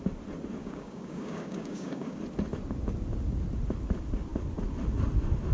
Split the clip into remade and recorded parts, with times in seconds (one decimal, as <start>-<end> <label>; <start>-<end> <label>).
0.0-0.6 recorded; 0.6-2.2 remade; 2.2-5.5 recorded